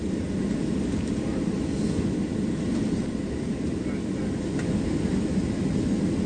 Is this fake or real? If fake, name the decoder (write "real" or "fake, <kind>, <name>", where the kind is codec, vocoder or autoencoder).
real